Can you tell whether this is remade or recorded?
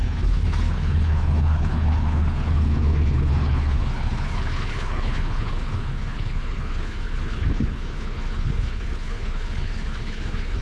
remade